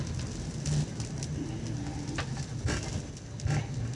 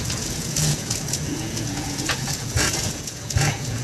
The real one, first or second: first